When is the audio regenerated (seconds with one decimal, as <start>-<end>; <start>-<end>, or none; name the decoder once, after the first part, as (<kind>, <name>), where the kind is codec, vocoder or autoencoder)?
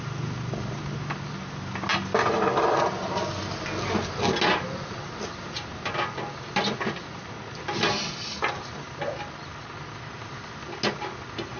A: none